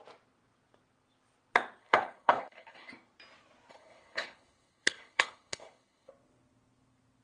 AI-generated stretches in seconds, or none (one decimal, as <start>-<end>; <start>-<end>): 1.8-2.9; 3.7-6.1